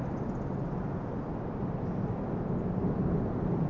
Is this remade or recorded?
recorded